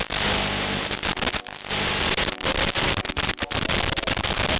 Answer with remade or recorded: recorded